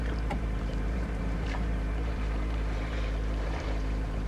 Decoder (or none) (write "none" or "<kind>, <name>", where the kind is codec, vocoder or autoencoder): vocoder, BigVGAN v2